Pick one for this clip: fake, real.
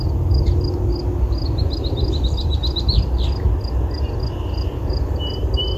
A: real